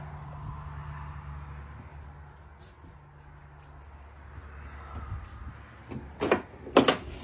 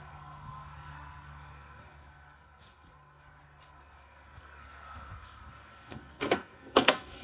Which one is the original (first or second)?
first